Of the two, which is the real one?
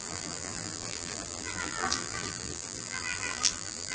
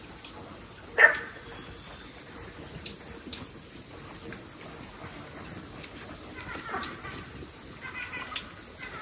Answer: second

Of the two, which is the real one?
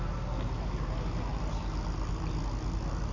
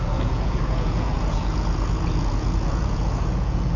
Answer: first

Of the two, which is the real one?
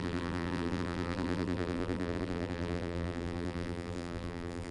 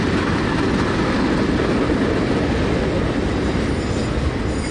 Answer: second